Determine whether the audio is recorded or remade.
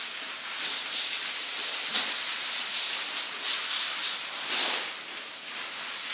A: recorded